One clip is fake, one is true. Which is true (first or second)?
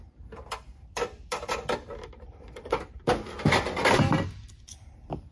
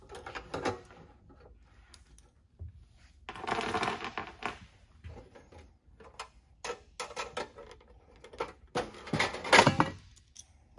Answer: second